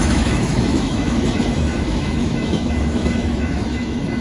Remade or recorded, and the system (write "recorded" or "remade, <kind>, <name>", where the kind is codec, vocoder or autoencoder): remade, autoencoder, DAC-VAE